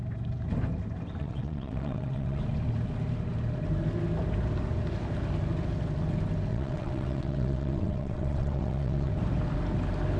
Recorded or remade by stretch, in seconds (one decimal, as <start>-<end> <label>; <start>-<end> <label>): 0.0-1.2 recorded; 1.2-2.4 remade; 2.4-6.5 recorded; 6.5-9.1 remade; 9.1-10.2 recorded